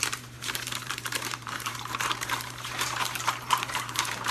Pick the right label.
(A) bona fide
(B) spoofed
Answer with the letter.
B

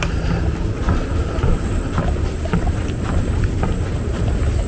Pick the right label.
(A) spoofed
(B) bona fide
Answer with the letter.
A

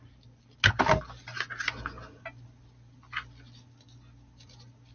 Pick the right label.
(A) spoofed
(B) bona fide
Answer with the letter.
B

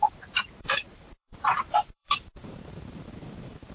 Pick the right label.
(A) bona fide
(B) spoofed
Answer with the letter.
B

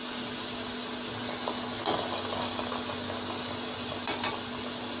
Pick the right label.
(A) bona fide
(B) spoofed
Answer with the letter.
A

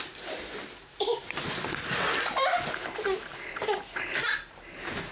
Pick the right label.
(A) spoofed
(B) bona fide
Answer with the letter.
B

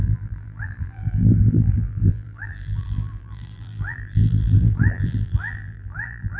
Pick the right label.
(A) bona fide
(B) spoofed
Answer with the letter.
B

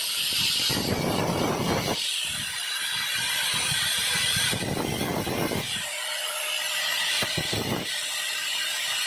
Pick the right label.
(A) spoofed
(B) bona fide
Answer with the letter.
A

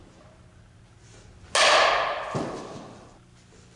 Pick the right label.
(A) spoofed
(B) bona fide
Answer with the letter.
B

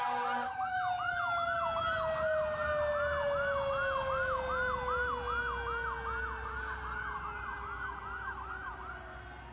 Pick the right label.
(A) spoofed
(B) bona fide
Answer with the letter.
B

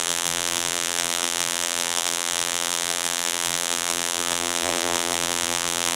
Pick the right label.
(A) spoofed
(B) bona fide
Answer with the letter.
A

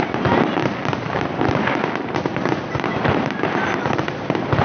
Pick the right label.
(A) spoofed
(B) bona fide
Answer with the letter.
B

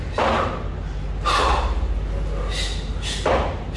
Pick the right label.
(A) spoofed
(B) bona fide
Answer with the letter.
B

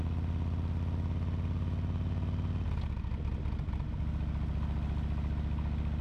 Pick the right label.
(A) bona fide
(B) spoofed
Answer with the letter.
A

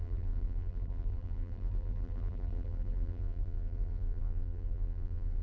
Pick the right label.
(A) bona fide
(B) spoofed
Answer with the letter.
B